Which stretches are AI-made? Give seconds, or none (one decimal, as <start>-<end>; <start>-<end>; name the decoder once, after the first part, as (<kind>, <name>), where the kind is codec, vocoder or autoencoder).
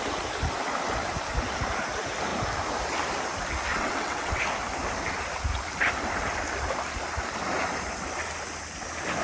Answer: 3.7-4.4 (vocoder, WaveNeXt)